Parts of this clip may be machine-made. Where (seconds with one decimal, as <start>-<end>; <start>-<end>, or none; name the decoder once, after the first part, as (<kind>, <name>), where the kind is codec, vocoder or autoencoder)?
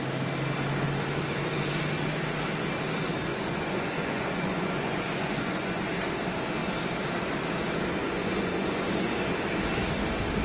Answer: 3.3-5.8 (vocoder, Vocos); 8.0-9.3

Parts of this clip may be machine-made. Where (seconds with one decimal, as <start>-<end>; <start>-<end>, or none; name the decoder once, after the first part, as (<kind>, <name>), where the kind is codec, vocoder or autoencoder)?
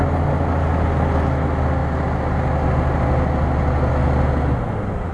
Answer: none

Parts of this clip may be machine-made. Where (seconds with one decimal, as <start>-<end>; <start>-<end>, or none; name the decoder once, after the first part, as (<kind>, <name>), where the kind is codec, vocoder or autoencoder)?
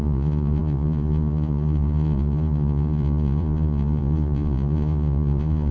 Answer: 0.0-5.7 (vocoder, Vocos)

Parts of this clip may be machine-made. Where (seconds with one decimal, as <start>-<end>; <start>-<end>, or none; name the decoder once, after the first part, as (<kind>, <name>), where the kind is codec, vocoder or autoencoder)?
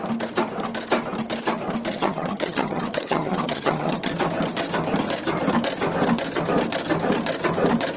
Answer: 1.9-4.1 (vocoder, HiFi-GAN)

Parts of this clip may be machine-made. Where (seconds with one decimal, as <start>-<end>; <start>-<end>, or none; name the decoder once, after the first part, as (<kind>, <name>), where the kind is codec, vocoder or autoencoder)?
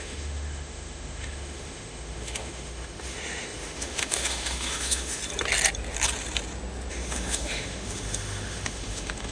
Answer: 0.0-5.2 (autoencoder, DAC-VAE); 6.9-9.3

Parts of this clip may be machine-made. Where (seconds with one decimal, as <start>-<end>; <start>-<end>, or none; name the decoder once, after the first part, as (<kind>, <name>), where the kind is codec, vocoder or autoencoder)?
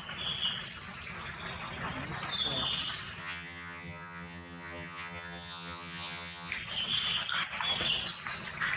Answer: 3.2-6.5 (vocoder, HiFi-GAN)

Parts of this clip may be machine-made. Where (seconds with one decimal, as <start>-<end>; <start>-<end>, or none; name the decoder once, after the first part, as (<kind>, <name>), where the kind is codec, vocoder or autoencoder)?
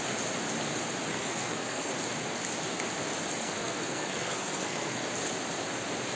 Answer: 1.1-1.9 (codec, SNAC); 3.4-5.0